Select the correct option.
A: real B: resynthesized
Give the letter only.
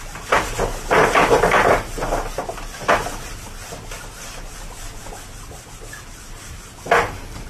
A